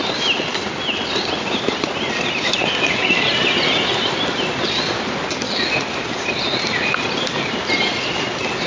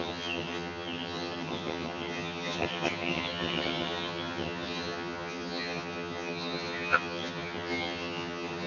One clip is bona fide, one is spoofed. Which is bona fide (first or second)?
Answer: first